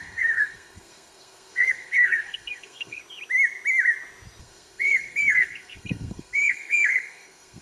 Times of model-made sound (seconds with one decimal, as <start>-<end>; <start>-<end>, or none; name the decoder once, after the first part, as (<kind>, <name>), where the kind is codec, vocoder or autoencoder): 0.0-3.0 (codec, SNAC); 4.4-7.6